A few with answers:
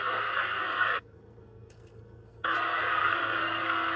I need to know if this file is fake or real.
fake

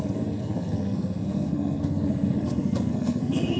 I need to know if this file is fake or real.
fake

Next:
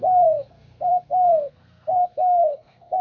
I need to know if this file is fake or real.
fake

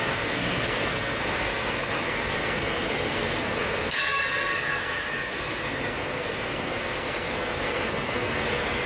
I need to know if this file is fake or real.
fake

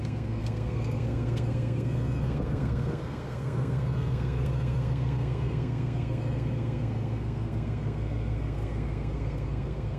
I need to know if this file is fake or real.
fake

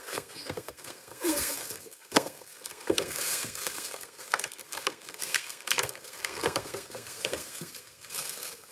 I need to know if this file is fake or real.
fake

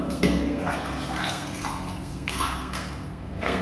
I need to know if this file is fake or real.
fake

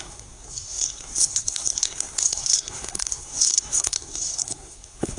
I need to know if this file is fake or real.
fake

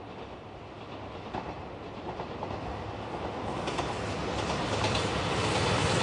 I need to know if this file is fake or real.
real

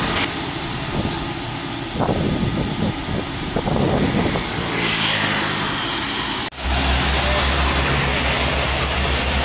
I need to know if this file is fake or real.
real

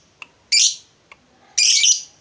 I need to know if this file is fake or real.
real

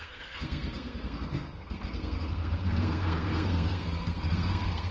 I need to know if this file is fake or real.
fake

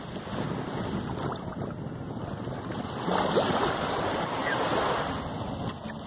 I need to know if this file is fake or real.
real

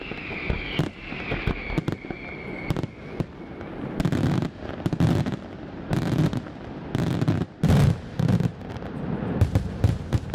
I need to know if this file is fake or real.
real